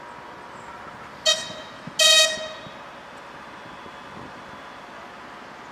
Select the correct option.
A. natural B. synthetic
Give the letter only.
A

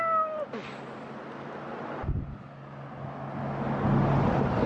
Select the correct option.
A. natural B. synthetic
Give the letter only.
A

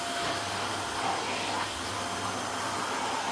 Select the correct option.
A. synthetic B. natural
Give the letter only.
B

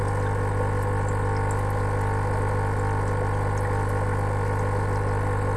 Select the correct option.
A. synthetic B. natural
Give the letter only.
B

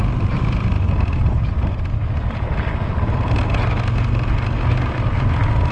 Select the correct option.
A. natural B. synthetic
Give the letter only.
A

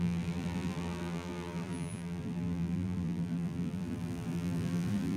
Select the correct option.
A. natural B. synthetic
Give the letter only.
B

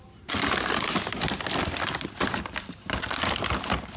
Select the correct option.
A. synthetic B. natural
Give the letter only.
B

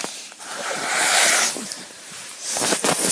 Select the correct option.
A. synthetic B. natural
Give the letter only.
A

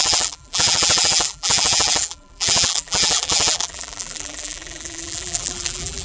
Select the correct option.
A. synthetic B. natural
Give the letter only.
A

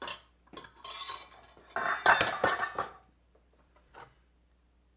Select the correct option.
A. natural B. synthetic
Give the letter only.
A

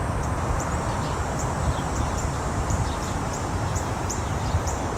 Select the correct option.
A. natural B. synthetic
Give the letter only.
B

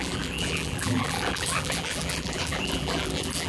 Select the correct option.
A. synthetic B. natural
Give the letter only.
A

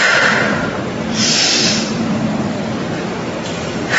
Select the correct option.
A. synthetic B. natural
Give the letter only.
A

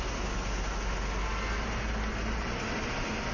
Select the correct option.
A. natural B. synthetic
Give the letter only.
A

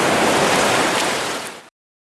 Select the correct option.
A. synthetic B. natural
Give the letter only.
A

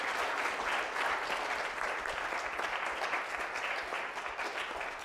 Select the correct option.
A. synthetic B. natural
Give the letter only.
B